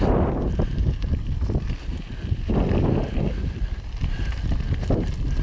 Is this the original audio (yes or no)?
yes